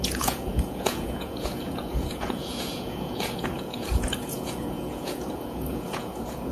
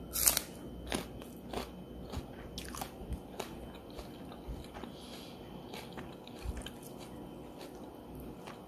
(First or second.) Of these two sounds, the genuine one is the second